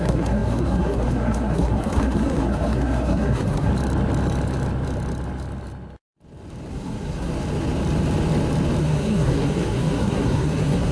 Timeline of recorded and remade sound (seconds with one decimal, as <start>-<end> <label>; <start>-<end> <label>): 0.0-3.7 remade; 3.7-6.7 recorded; 6.7-7.3 remade; 7.3-8.8 recorded; 8.8-10.9 remade